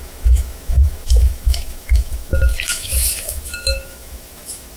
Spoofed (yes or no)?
yes